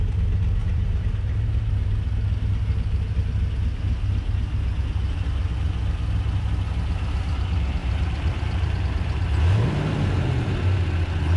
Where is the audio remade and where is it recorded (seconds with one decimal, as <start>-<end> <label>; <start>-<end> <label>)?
0.0-0.6 recorded; 0.6-1.7 remade; 1.7-7.8 recorded; 7.8-8.8 remade; 8.8-11.4 recorded